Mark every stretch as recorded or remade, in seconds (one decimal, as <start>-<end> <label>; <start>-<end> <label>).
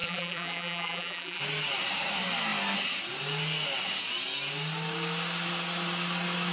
0.0-1.4 remade; 1.4-6.5 recorded